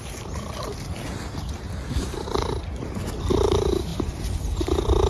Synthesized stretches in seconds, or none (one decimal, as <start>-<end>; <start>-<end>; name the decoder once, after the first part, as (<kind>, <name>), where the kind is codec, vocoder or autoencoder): none